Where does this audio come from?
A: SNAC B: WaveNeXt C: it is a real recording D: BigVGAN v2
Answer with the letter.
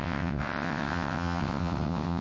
B